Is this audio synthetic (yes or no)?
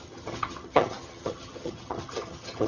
yes